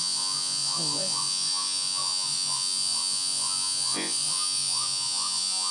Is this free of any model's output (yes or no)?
no